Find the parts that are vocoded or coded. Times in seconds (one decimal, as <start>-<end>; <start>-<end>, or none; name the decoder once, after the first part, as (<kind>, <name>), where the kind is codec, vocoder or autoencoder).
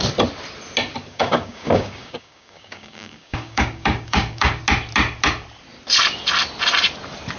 1.1-4.6 (codec, DAC)